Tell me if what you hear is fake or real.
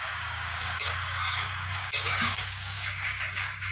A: fake